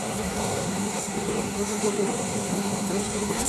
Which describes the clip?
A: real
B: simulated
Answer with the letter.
B